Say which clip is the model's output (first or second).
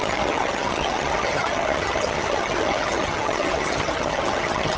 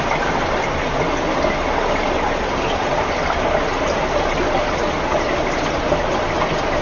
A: first